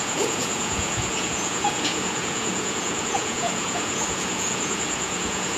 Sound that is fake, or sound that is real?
fake